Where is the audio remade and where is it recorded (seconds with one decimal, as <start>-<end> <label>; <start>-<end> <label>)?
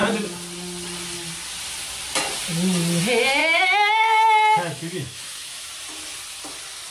0.0-3.4 recorded; 3.4-5.7 remade; 5.7-6.9 recorded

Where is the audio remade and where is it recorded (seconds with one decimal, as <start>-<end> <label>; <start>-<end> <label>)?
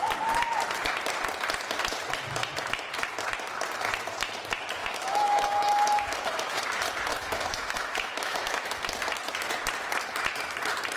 0.0-4.8 recorded; 4.8-6.6 remade; 6.6-7.1 recorded; 7.1-8.8 remade; 8.8-11.0 recorded